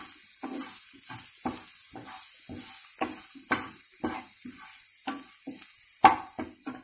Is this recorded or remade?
recorded